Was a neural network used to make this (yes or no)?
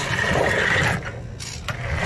no